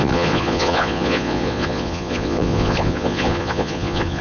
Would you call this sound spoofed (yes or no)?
yes